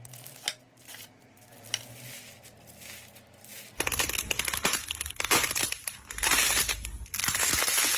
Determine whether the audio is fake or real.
real